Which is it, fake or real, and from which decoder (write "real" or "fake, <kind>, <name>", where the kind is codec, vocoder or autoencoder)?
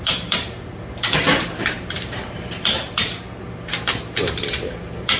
fake, vocoder, BigVGAN v2